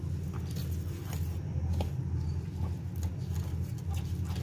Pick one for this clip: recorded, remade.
recorded